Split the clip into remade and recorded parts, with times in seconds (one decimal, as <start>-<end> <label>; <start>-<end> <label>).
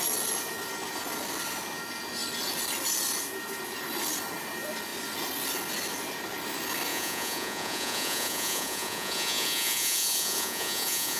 0.0-6.9 recorded; 6.9-11.2 remade